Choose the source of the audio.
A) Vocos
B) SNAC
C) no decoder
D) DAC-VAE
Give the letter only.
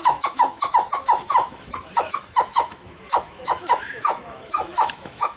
D